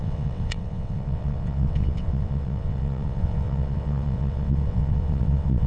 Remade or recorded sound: remade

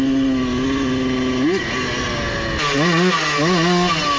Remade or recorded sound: recorded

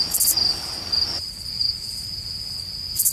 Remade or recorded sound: recorded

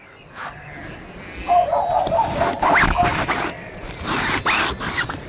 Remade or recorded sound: recorded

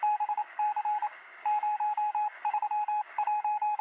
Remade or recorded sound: remade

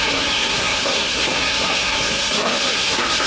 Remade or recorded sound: remade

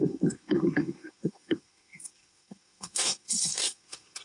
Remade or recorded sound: remade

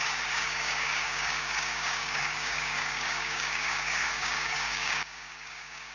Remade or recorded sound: remade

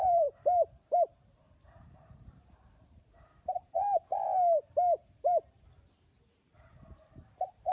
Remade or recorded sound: remade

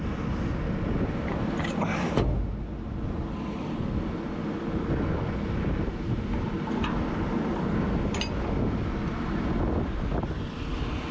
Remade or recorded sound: recorded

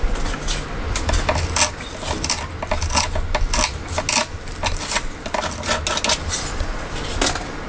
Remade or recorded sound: recorded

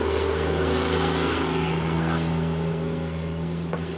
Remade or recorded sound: remade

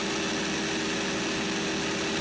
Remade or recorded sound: recorded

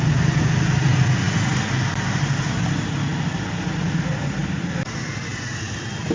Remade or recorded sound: recorded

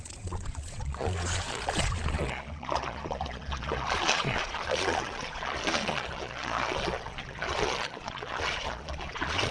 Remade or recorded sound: remade